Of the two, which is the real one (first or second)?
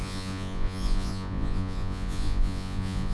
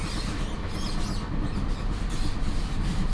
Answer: second